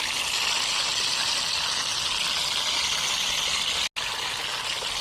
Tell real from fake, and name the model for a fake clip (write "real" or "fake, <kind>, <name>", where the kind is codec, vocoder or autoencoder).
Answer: real